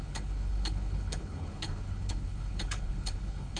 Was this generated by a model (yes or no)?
yes